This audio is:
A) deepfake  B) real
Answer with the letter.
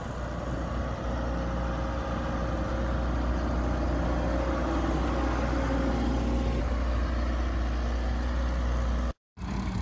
B